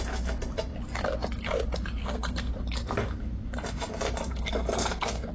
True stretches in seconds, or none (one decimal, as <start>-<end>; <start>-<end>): 0.0-2.0; 2.5-4.3

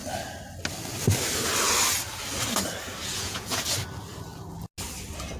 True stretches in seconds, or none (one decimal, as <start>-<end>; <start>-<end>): 0.0-3.0; 3.6-5.4

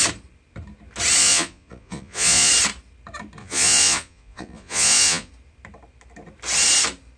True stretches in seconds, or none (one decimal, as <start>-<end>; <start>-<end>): 0.0-1.2; 2.5-3.4; 5.3-7.2

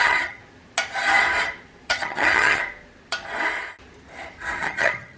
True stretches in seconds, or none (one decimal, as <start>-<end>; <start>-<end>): 0.4-1.9; 2.6-4.6

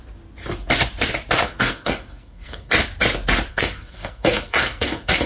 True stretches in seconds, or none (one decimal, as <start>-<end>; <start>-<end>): 0.0-1.4; 2.7-3.5

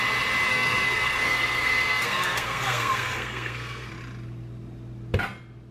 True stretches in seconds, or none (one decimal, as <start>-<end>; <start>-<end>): 0.0-0.5; 3.9-5.7